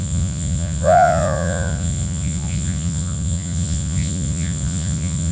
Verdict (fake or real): fake